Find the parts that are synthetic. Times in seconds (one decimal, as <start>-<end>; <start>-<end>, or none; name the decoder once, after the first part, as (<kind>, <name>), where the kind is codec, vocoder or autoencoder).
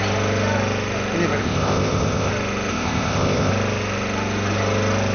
1.4-2.3 (codec, ZipCodec); 2.7-3.5